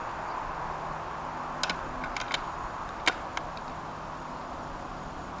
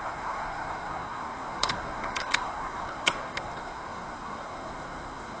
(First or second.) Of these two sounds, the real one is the first